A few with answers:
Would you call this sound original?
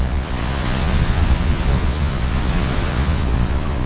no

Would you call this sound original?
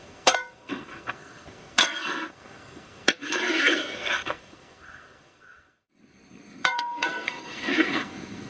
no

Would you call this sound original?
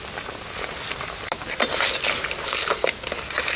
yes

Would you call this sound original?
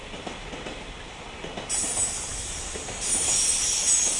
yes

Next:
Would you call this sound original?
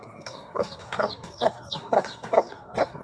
no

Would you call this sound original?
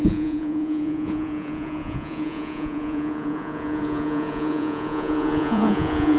no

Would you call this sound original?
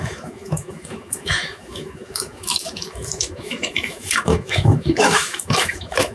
no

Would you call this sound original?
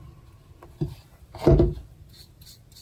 yes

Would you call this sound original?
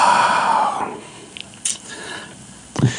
yes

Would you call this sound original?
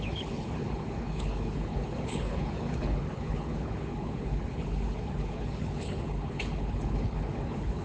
no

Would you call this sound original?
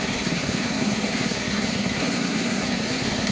no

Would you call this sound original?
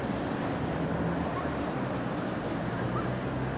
yes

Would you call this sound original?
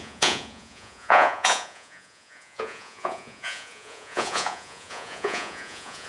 no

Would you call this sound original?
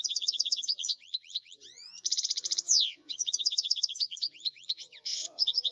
no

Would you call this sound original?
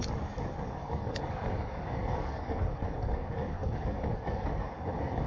no